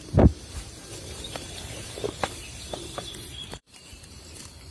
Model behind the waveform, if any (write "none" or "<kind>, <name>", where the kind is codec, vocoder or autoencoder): vocoder, BigVGAN v2